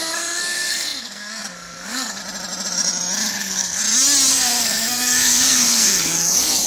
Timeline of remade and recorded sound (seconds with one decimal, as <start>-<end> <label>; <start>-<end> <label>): 0.0-2.2 remade; 2.2-3.3 recorded; 3.3-3.8 remade; 3.8-4.3 recorded; 4.3-6.7 remade